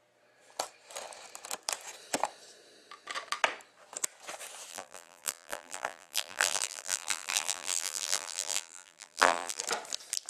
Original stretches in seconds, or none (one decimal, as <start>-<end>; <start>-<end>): 0.0-4.7; 9.6-10.3